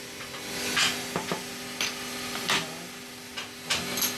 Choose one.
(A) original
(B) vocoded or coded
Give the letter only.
A